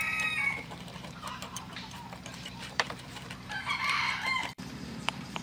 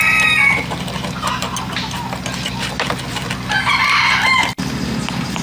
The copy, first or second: first